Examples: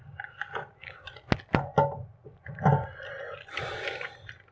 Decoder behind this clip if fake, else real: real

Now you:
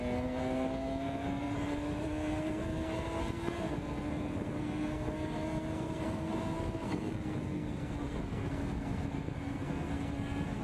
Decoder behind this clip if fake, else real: fake, codec, SNAC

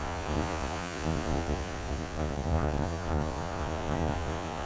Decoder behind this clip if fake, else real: fake, vocoder, Vocos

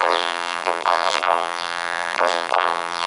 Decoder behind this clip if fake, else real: fake, vocoder, BigVGAN v2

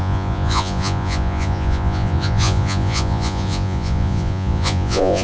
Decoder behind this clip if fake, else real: fake, vocoder, Vocos